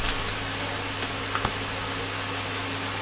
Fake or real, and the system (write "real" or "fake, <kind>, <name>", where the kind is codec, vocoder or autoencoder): real